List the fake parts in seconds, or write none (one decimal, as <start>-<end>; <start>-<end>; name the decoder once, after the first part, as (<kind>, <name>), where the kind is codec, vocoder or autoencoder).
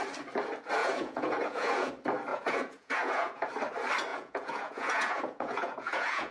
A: 0.8-1.9 (vocoder, Vocos); 2.3-3.5; 4.1-6.3